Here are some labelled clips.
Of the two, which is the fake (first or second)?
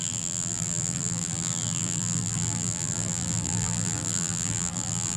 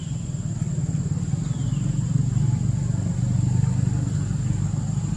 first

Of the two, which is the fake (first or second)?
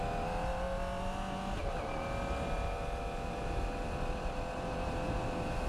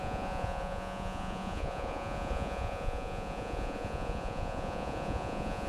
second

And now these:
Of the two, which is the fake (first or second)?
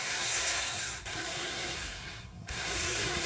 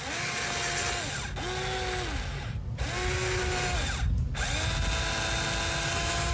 first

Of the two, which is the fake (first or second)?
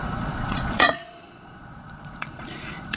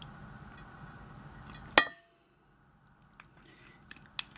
first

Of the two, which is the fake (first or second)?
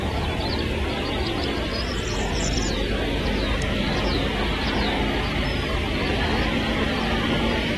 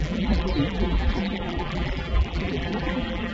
second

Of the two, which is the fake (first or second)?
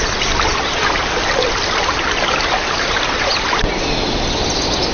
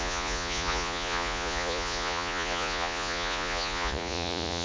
second